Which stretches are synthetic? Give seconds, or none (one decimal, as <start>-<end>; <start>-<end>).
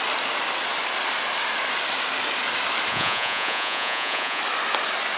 2.9-4.4